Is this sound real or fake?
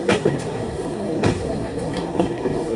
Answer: fake